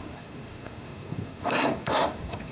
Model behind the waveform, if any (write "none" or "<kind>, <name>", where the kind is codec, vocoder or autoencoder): codec, SNAC